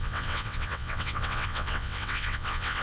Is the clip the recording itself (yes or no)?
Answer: no